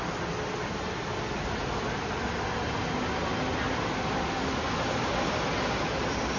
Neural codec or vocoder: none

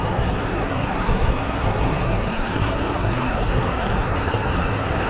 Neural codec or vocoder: codec, SNAC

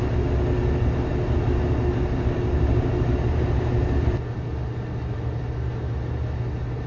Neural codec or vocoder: none